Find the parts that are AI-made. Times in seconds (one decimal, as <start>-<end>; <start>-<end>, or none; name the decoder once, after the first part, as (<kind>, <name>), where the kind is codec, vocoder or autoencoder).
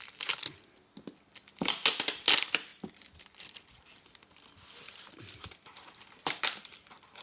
2.7-6.4 (vocoder, BigVGAN v2)